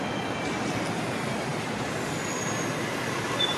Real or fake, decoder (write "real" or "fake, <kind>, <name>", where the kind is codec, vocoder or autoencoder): real